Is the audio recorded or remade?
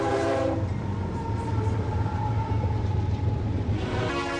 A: remade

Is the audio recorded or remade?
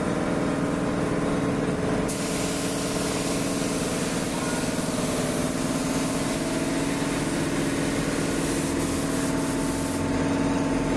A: recorded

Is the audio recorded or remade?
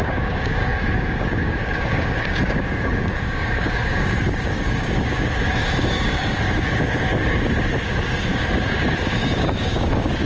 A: remade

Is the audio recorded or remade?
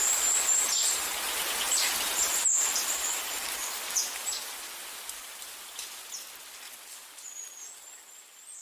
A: recorded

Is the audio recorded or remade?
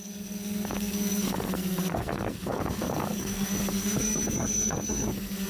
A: remade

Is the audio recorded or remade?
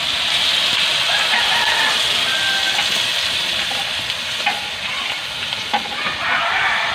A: recorded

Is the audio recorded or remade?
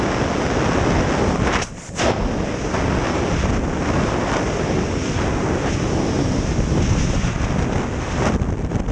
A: recorded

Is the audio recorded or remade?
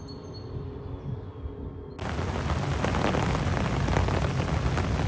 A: recorded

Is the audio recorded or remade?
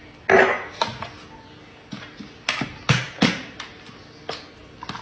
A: recorded